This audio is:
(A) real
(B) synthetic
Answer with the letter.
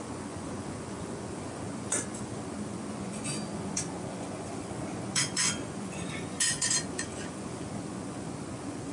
B